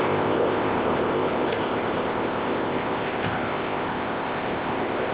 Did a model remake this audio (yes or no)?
yes